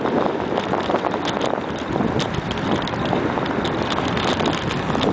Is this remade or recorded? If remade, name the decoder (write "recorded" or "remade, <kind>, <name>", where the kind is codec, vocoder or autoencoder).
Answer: recorded